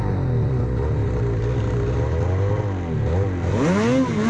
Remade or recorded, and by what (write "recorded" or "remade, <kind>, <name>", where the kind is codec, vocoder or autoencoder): recorded